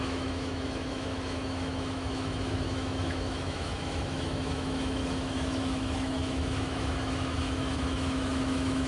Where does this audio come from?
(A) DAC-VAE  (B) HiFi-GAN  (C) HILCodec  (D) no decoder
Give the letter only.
A